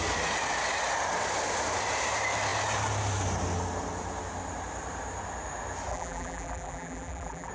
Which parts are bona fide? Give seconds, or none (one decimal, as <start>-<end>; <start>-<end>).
0.0-5.9